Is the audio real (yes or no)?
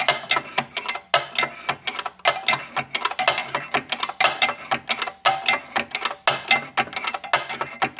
yes